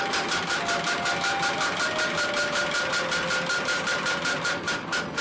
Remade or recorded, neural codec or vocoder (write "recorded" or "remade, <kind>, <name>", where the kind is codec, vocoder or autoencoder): recorded